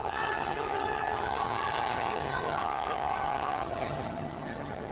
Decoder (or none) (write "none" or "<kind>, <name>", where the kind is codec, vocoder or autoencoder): vocoder, HiFi-GAN